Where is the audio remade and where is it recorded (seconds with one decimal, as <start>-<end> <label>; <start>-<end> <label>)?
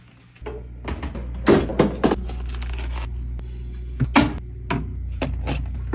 0.0-5.9 recorded